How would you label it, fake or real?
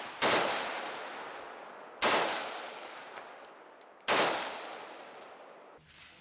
real